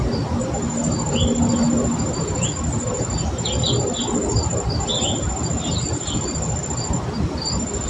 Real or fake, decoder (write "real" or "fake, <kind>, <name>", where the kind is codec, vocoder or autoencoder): real